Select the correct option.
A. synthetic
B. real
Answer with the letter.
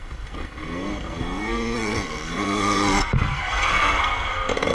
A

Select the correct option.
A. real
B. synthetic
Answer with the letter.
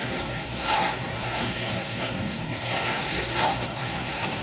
B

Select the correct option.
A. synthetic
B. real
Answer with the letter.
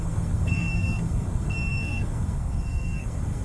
A